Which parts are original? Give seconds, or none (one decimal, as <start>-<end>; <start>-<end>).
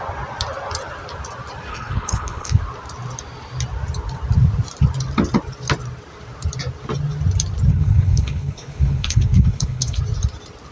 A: 0.0-1.7; 2.6-7.7; 10.0-10.7